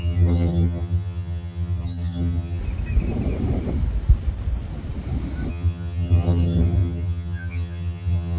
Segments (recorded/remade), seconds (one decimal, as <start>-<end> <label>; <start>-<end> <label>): 0.0-2.6 remade; 2.6-5.5 recorded; 5.5-8.4 remade